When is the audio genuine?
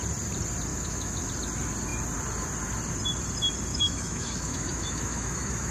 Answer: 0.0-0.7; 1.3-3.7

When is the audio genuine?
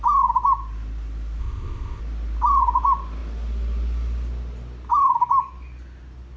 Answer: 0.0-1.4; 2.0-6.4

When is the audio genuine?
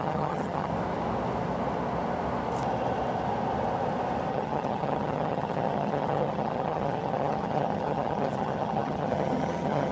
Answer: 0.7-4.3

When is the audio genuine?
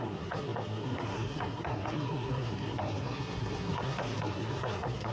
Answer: none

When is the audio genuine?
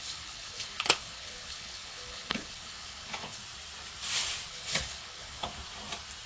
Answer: 3.4-4.5; 5.5-6.3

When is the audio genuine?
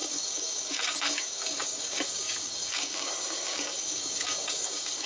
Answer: none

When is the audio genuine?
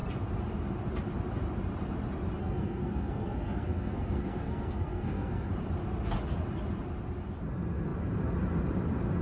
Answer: 0.0-2.4; 5.5-9.2